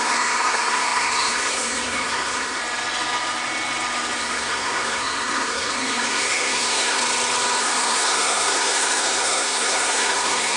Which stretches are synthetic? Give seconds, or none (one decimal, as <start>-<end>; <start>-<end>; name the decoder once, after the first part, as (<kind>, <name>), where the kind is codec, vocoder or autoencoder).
0.0-2.6 (codec, SNAC); 4.2-7.0; 7.6-10.6